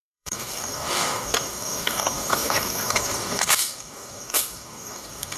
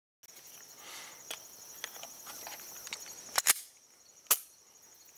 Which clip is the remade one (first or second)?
first